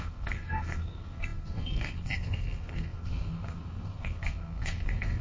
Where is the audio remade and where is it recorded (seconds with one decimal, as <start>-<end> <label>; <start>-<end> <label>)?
0.0-5.2 remade